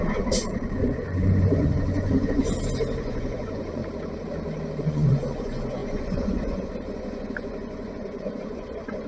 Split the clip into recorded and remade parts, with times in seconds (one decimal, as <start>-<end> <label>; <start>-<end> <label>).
0.0-2.4 remade; 2.4-3.0 recorded; 3.0-3.8 remade; 3.8-4.8 recorded; 4.8-9.1 remade